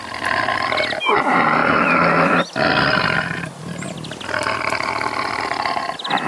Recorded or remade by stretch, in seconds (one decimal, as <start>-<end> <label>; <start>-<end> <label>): 0.0-6.3 recorded